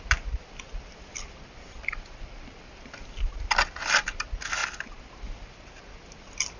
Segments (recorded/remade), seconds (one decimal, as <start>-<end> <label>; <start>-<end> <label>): 0.0-6.6 recorded